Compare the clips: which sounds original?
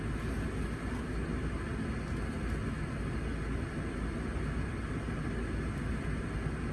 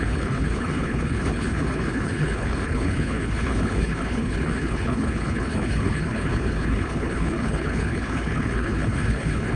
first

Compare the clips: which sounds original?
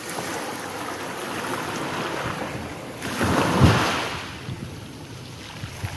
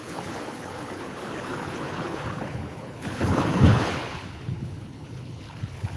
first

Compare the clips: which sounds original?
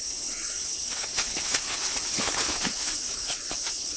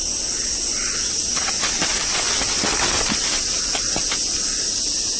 second